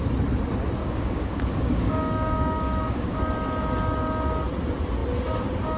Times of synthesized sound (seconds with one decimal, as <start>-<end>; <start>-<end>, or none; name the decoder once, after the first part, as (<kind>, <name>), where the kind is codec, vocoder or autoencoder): 0.8-3.2 (codec, DAC)